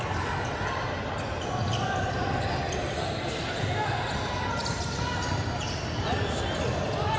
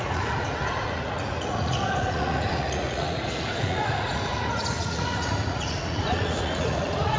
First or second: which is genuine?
first